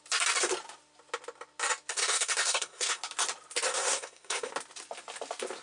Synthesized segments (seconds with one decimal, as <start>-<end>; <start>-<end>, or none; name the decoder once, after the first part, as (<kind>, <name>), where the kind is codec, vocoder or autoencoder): 1.9-3.0 (codec, SNAC); 3.7-4.5